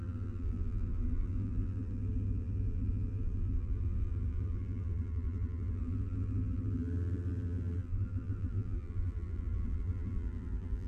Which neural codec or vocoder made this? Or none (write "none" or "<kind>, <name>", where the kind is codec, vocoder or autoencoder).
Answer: vocoder, BigVGAN v2